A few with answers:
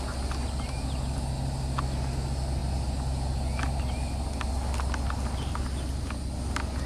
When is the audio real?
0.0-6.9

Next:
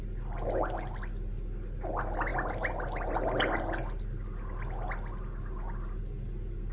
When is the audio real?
0.0-6.7

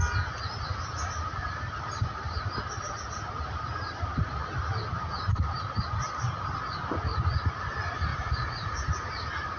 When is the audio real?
0.0-7.1; 7.6-8.1; 8.9-9.6